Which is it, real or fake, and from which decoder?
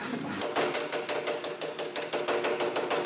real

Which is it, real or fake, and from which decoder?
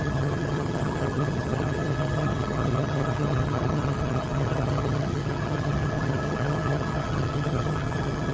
fake, vocoder, HiFi-GAN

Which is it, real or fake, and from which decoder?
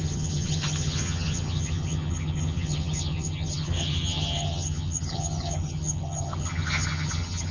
fake, vocoder, HiFi-GAN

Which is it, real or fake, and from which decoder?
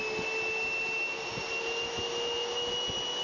real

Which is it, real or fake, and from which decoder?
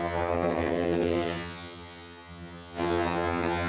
fake, vocoder, HiFi-GAN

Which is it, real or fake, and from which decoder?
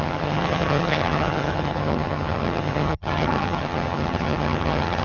fake, vocoder, HiFi-GAN